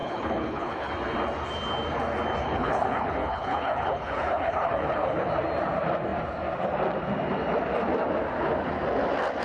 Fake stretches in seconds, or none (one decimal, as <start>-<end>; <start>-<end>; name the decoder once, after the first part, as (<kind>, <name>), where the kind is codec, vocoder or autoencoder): 0.0-0.9 (codec, HILCodec); 2.4-5.3